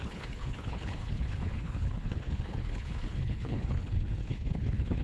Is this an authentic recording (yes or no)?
no